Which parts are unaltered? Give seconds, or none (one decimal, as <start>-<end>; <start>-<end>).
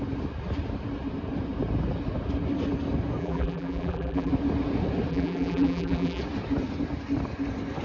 0.0-3.2; 4.3-5.1; 6.2-7.8